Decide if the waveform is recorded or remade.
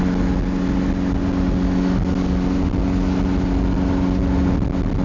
recorded